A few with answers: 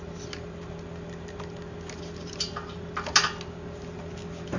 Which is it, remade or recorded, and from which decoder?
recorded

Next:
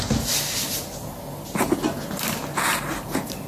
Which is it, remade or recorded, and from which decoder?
recorded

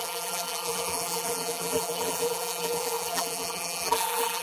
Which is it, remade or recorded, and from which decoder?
remade, vocoder, BigVGAN v2